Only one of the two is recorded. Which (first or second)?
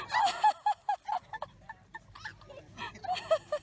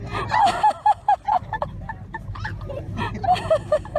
first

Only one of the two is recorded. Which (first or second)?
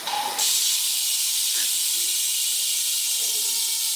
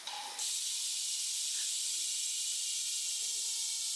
second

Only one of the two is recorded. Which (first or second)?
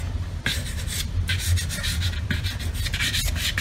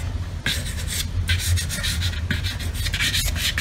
second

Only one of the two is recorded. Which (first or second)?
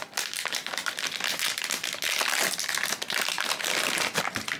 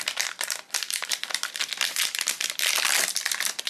first